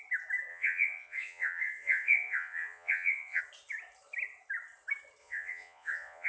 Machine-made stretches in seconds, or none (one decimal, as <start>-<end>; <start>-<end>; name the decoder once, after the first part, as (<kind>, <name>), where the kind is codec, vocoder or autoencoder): 0.5-3.4 (vocoder, Vocos); 5.2-6.3